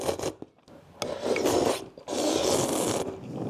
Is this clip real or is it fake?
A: real